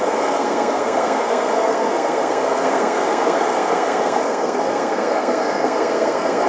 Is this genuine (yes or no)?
no